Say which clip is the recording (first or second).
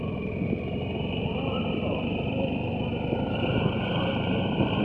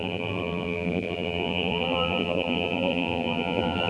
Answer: first